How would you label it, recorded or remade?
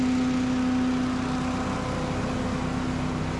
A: recorded